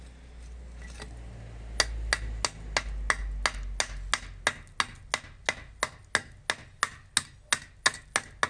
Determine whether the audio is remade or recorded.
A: recorded